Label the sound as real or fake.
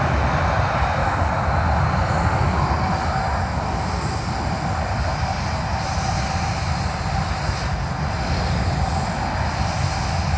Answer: real